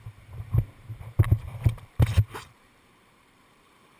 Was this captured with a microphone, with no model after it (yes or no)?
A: no